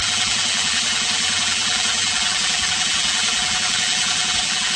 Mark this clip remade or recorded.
remade